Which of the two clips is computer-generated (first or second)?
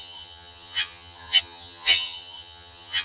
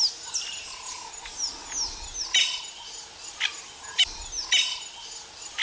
first